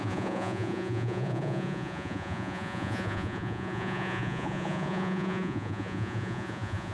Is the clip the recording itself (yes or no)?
no